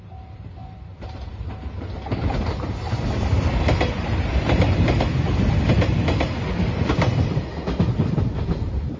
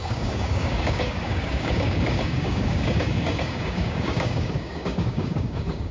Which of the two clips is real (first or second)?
first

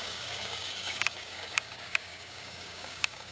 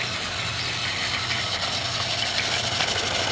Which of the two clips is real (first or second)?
second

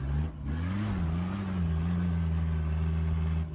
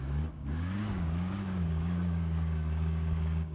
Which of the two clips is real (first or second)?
first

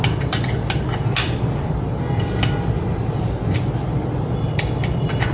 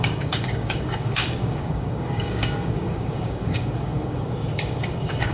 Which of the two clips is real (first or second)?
first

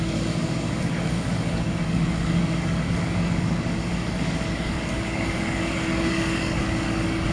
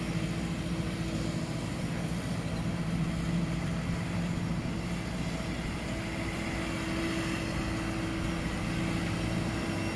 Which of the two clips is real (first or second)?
second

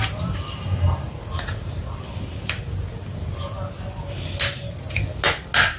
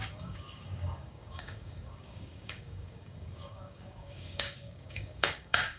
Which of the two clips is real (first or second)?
first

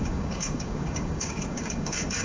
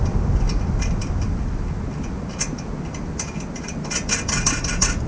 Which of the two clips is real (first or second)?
second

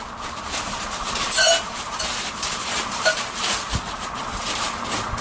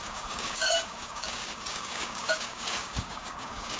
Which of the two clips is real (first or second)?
first